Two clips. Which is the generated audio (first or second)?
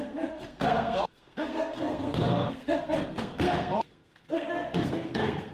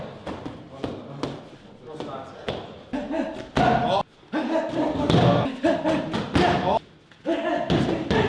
first